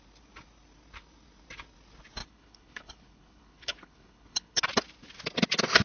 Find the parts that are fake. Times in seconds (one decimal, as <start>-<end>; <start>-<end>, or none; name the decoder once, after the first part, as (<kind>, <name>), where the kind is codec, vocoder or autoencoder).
2.2-4.6 (codec, HILCodec)